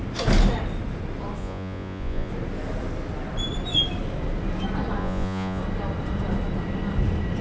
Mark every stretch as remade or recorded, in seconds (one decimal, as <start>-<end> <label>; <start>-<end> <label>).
0.0-1.4 recorded; 1.4-2.3 remade; 2.3-5.0 recorded; 5.0-5.6 remade; 5.6-7.4 recorded